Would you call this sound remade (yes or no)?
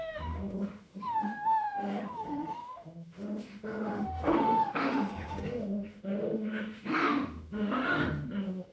yes